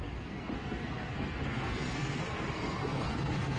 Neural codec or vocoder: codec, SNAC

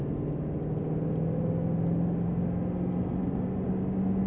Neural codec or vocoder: none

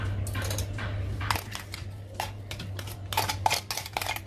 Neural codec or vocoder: none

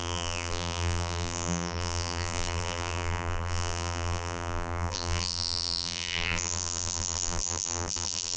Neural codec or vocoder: vocoder, BigVGAN v2